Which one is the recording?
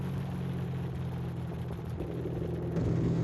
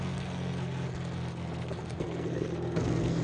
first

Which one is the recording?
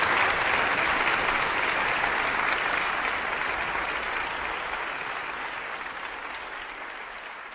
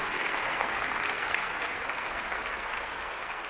first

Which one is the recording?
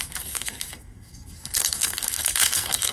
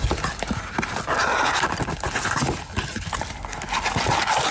second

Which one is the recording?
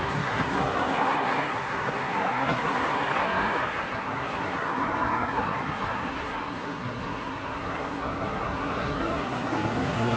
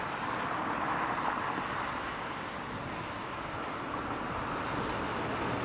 second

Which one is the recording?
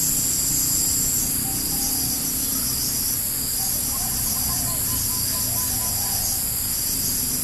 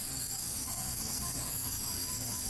first